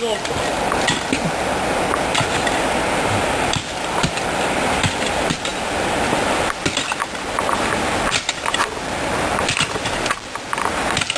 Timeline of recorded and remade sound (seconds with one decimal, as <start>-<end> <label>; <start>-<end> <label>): 0.0-11.2 remade